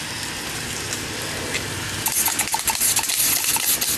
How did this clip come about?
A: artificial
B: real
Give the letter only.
B